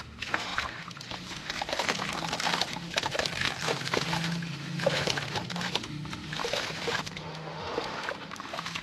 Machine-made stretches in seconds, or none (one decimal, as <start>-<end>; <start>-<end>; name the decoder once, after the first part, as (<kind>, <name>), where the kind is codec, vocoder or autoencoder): 0.0-8.8 (autoencoder, DAC-VAE)